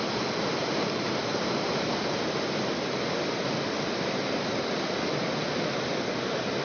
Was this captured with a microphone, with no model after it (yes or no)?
yes